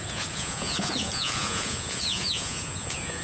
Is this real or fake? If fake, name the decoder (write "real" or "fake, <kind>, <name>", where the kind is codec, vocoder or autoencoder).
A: fake, vocoder, Vocos